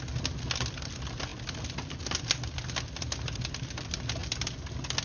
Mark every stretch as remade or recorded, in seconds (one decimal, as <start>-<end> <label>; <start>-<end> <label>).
0.0-5.0 recorded